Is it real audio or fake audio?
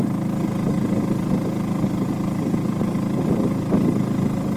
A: real